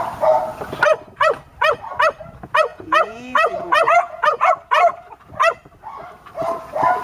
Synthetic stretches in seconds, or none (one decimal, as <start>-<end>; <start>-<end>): 2.7-4.5